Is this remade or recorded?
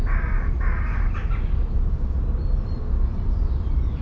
recorded